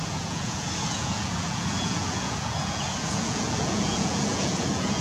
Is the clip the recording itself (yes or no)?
no